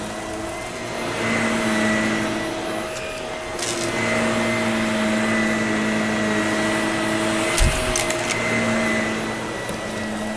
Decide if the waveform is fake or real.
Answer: real